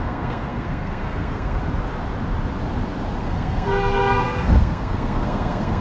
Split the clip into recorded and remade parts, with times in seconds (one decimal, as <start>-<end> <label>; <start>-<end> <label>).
0.0-1.6 remade; 1.6-3.2 recorded; 3.2-5.8 remade